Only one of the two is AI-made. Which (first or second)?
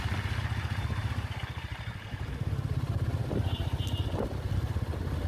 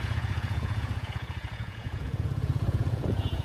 second